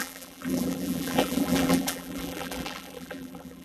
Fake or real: fake